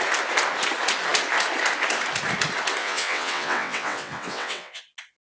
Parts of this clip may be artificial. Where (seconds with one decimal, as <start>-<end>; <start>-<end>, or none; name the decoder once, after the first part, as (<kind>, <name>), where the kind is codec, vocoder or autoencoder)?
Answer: 2.8-4.8 (vocoder, WaveNeXt)